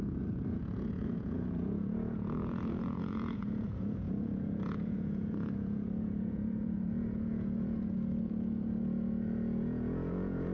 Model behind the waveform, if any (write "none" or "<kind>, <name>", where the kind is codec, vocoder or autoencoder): vocoder, Vocos